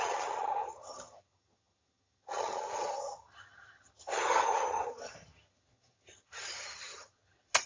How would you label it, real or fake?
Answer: fake